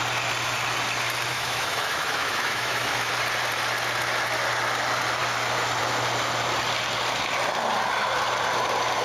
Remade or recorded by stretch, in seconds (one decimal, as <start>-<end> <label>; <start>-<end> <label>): 0.0-1.3 recorded; 1.3-3.1 remade; 3.1-9.0 recorded